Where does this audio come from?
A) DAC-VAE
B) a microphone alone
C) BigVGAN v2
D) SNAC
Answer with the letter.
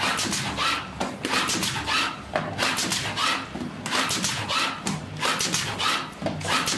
B